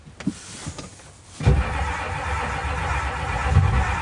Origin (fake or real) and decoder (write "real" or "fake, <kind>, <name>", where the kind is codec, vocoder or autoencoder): real